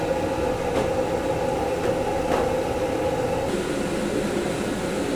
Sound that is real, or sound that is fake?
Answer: real